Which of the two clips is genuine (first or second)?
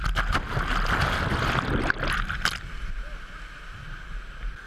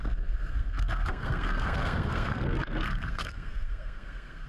first